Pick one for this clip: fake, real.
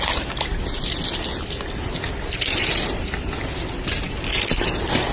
real